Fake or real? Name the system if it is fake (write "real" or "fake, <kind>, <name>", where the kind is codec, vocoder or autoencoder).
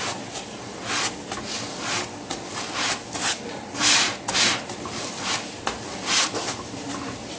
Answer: real